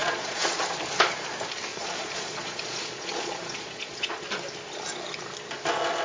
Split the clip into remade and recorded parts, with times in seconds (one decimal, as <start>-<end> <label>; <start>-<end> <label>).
0.0-0.6 remade; 0.6-1.7 recorded; 1.7-4.2 remade; 4.2-6.0 recorded